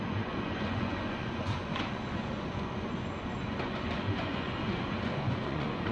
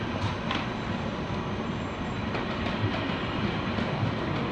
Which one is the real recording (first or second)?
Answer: second